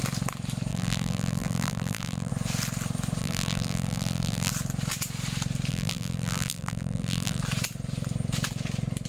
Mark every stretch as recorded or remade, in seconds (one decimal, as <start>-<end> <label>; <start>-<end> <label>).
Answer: 0.0-0.7 recorded; 0.7-2.3 remade; 2.3-3.2 recorded; 3.2-4.5 remade; 4.5-5.7 recorded; 5.7-7.4 remade; 7.4-9.1 recorded